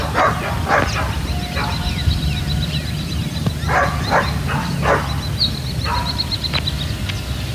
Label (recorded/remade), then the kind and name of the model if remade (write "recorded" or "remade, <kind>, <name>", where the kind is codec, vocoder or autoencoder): recorded